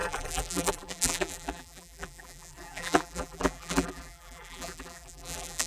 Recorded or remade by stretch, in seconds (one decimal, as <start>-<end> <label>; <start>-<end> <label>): 0.0-5.7 remade